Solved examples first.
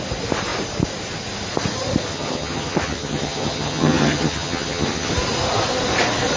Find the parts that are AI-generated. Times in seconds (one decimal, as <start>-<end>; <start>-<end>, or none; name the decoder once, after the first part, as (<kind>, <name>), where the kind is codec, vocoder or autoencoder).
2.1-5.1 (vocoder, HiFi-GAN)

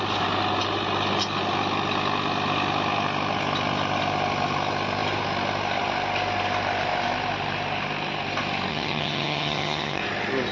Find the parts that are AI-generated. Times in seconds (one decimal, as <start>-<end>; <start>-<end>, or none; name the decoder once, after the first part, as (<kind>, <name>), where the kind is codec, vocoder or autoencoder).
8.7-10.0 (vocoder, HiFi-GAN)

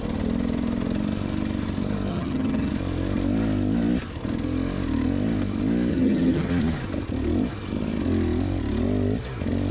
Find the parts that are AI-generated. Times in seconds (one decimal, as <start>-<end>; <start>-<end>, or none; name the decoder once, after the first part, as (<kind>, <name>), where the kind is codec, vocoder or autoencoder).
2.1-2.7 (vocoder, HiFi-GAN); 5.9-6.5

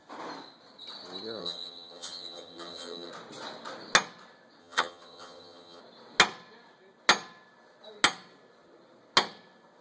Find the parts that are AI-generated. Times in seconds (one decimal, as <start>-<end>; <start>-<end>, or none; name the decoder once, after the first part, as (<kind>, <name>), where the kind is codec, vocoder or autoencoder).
1.4-3.1 (vocoder, HiFi-GAN); 4.6-5.8

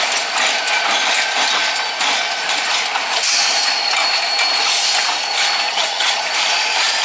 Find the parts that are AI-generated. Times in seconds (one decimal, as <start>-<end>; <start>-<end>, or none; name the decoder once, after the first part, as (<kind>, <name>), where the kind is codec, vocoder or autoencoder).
5.7-6.2 (vocoder, HiFi-GAN)

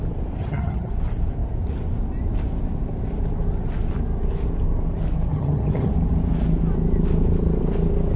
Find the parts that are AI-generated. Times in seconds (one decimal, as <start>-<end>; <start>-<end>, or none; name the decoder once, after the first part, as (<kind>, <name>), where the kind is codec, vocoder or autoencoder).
0.4-0.9 (vocoder, HiFi-GAN); 5.3-5.9

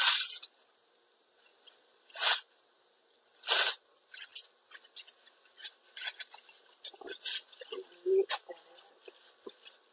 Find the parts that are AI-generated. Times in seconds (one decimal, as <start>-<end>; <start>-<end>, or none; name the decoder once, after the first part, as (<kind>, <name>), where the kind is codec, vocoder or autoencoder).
none

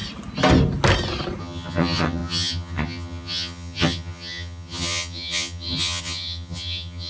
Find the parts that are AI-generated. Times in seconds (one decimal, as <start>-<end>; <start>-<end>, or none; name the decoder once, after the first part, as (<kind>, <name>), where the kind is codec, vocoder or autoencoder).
1.4-7.1 (vocoder, HiFi-GAN)